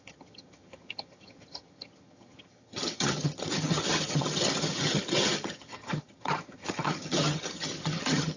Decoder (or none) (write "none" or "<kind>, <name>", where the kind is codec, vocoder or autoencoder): vocoder, HiFi-GAN